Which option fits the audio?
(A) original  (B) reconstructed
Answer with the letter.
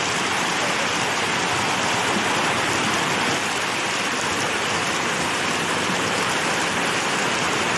A